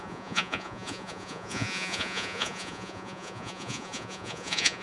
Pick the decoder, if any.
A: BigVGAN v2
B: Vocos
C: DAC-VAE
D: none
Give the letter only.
B